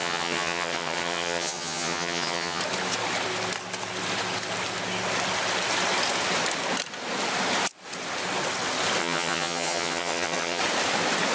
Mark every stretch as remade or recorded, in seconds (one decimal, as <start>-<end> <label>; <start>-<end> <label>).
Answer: 0.0-2.6 remade; 2.6-9.0 recorded; 9.0-10.6 remade; 10.6-11.3 recorded